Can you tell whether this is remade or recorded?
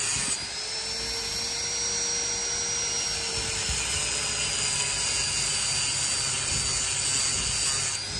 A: recorded